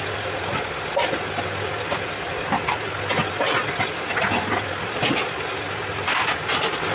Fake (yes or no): no